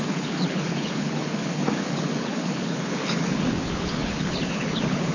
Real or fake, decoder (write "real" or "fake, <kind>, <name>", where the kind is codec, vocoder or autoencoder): fake, codec, HILCodec